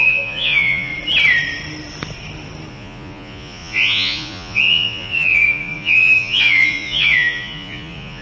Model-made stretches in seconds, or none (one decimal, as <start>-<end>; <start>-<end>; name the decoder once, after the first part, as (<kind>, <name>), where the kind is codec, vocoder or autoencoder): 0.0-0.9 (vocoder, Vocos); 2.7-8.2